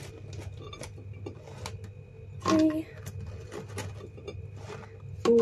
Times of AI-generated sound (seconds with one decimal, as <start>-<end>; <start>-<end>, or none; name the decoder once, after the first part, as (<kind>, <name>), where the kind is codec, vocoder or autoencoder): none